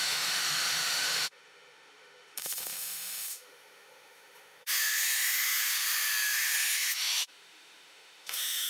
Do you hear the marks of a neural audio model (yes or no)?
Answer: yes